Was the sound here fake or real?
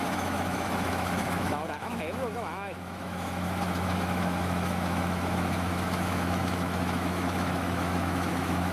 fake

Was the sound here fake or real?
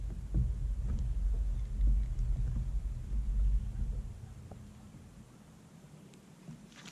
real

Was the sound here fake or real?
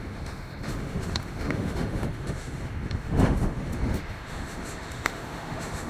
fake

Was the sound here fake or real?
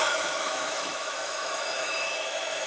fake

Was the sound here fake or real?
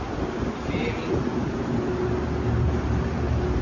real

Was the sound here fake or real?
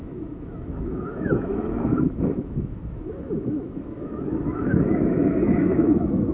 fake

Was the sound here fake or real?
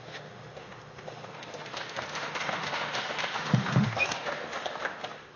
fake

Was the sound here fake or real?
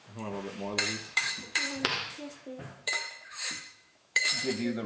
fake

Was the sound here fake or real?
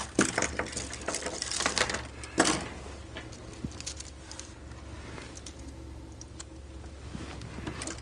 real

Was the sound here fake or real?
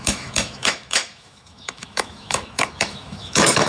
fake